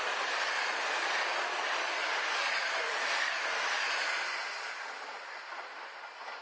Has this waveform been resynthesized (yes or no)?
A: no